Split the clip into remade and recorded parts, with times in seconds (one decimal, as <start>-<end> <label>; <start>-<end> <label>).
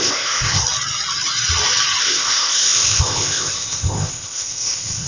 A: 0.0-0.6 remade; 0.6-2.0 recorded; 2.0-5.1 remade